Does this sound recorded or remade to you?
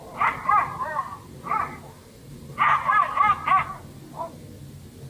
recorded